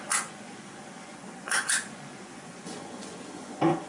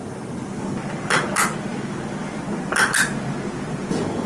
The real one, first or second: second